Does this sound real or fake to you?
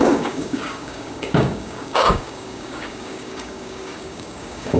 fake